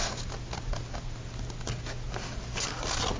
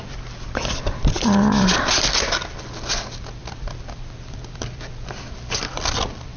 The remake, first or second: second